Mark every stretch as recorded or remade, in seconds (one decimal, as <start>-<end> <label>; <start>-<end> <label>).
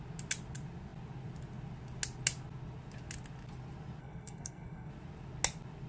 0.0-4.0 recorded; 4.0-4.9 remade; 4.9-5.9 recorded